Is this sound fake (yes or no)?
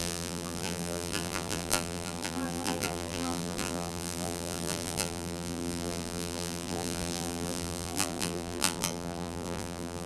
yes